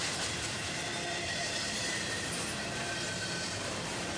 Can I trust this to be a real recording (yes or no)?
no